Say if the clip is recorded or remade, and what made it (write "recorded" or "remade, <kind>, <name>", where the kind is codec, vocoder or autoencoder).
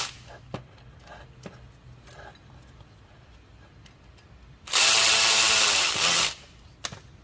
recorded